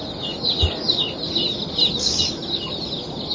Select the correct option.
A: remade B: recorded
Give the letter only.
B